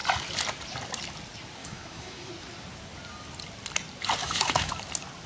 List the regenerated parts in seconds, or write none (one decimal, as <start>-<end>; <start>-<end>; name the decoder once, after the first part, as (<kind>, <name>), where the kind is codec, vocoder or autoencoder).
1.6-2.3 (autoencoder, DAC-VAE); 4.2-4.7